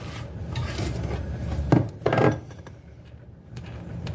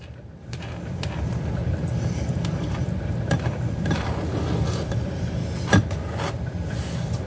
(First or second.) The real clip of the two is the first